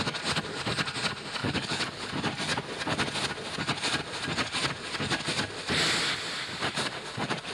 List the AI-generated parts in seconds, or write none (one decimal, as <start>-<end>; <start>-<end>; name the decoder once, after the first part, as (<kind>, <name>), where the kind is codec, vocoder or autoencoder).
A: 1.4-2.1 (codec, HILCodec)